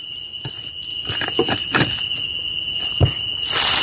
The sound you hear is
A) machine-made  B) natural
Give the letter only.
B